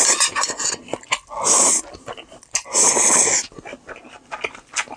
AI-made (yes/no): no